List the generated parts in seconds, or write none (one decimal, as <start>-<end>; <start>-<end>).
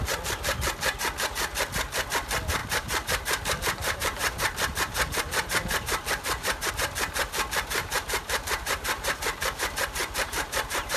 2.6-6.7; 7.8-9.6; 10.0-11.0